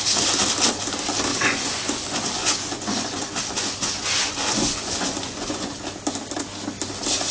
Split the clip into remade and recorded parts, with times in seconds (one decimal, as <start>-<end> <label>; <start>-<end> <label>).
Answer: 0.0-1.3 recorded; 1.3-5.7 remade; 5.7-7.3 recorded